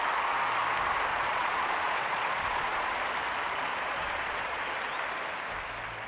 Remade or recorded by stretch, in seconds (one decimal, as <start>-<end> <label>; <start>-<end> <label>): 0.0-1.1 recorded; 1.1-3.0 remade; 3.0-3.7 recorded; 3.7-4.6 remade; 4.6-6.1 recorded